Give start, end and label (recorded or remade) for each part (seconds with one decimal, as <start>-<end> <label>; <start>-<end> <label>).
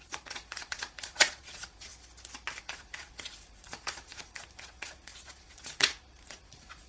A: 0.0-1.9 remade; 1.9-2.6 recorded; 2.6-6.9 remade